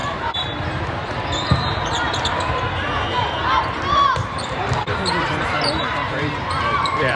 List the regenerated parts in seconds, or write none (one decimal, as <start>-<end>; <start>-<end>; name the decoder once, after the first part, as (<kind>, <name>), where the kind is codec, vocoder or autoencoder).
0.0-0.8 (vocoder, BigVGAN v2); 4.2-7.2

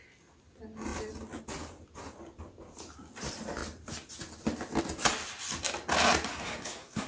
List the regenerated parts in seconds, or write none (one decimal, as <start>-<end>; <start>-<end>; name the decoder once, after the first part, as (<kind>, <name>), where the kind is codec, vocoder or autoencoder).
6.3-7.1 (codec, SNAC)

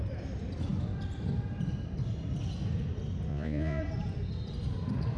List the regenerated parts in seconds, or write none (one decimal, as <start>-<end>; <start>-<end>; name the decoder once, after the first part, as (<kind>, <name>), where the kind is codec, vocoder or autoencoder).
3.3-3.8 (vocoder, Vocos)

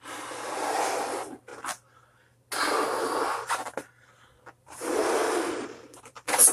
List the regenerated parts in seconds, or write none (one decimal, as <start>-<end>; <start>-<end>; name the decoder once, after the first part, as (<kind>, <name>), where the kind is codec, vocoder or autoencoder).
0.0-1.5 (vocoder, BigVGAN v2); 4.6-5.0; 5.6-6.5

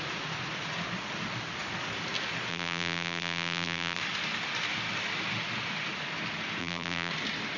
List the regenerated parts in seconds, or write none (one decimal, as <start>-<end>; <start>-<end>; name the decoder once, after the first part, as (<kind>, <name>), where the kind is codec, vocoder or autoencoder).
2.5-4.0 (vocoder, BigVGAN v2); 6.6-7.1

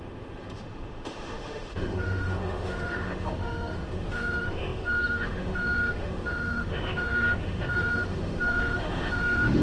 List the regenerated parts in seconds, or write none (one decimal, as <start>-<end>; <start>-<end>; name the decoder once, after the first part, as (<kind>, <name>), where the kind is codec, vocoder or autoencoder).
0.0-9.6 (autoencoder, DAC-VAE)